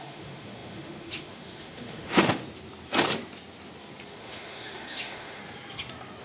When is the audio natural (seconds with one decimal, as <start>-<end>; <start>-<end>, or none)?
2.4-4.1; 5.4-6.2